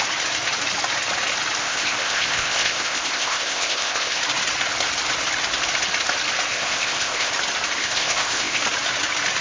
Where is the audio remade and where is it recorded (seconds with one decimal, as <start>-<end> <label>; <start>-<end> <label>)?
0.0-1.6 recorded; 1.6-4.2 remade; 4.2-6.5 recorded; 6.5-7.3 remade; 7.3-7.8 recorded; 7.8-8.6 remade; 8.6-9.4 recorded